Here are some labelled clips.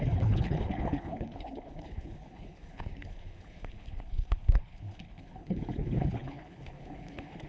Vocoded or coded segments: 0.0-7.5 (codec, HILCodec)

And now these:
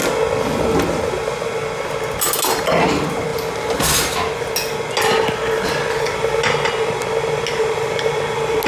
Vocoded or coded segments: none

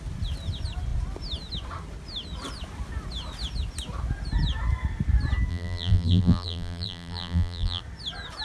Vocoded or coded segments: 5.5-7.8 (vocoder, BigVGAN v2)

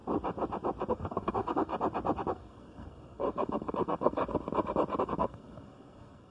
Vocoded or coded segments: 0.9-1.7 (codec, SNAC); 2.3-4.2; 5.0-6.3

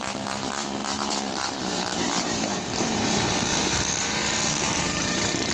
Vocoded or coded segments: 0.0-5.5 (vocoder, BigVGAN v2)

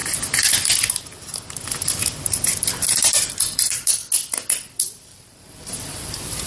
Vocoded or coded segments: 0.9-4.0 (vocoder, BigVGAN v2); 4.8-6.5